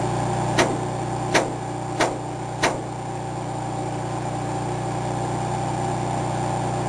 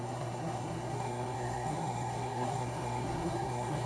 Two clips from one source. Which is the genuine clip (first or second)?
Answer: first